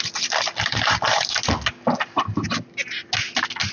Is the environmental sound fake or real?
real